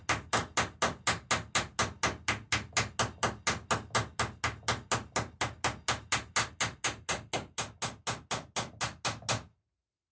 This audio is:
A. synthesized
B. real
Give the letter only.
B